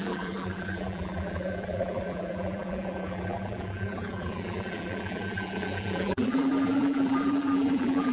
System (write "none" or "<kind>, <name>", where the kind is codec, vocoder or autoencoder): vocoder, BigVGAN v2